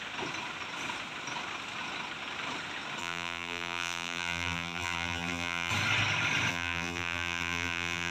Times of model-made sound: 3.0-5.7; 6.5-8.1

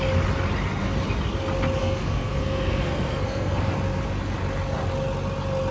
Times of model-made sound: 1.8-3.6